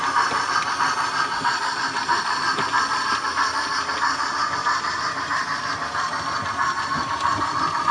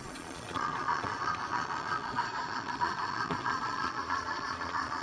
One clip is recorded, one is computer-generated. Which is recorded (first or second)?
first